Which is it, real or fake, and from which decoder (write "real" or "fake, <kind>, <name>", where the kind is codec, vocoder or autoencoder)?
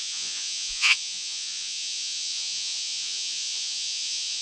fake, vocoder, Vocos